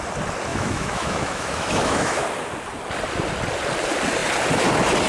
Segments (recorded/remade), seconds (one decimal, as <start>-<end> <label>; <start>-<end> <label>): 0.0-0.5 recorded; 0.5-2.2 remade; 2.2-5.1 recorded